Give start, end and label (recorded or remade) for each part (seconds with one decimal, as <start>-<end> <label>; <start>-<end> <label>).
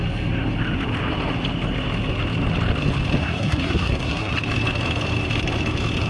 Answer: 0.0-3.2 recorded; 3.2-4.3 remade; 4.3-6.1 recorded